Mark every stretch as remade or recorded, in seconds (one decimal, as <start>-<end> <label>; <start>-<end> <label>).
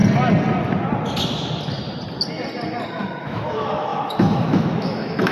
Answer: 0.0-3.2 recorded; 3.2-5.3 remade